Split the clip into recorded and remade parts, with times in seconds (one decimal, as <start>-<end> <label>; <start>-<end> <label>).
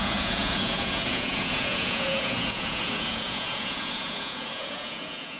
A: 0.0-5.4 remade